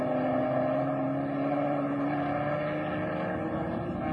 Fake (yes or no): no